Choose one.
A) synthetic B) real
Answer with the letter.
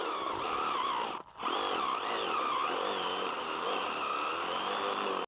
B